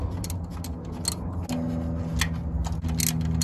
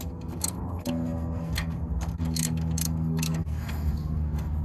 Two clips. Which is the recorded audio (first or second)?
first